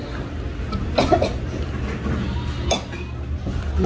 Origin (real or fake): real